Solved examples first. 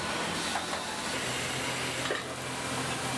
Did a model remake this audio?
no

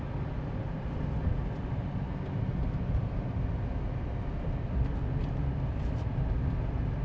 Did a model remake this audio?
no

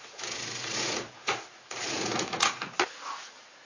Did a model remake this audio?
yes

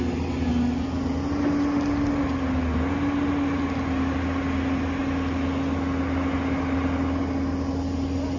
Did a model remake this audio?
no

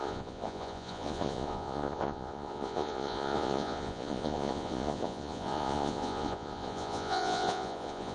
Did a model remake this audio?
yes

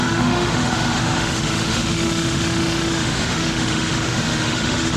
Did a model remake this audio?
yes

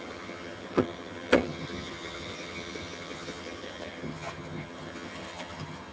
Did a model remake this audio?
yes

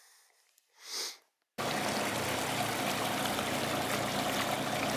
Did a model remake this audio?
no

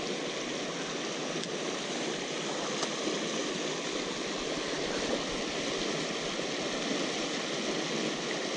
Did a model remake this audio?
no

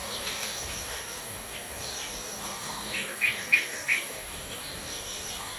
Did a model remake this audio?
yes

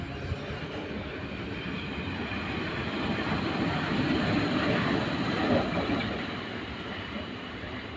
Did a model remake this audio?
yes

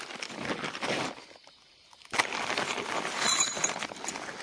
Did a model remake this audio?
no